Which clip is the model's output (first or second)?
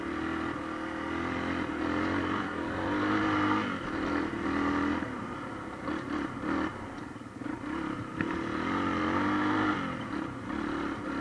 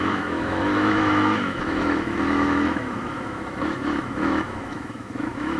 second